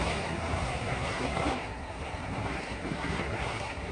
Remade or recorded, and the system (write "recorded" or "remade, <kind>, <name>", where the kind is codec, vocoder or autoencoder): remade, codec, SNAC